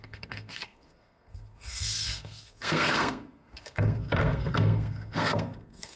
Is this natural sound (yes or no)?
no